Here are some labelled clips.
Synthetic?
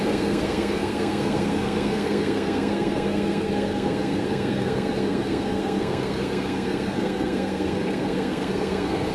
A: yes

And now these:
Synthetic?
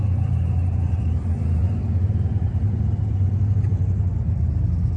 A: yes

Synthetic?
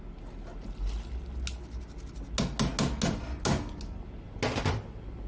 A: no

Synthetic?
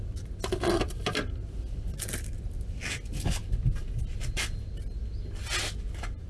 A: no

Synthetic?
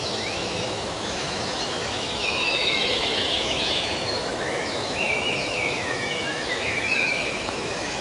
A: yes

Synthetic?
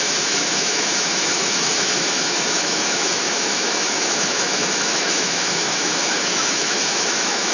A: yes